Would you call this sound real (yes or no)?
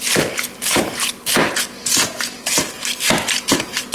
yes